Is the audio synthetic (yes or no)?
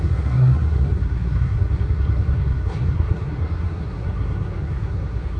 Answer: yes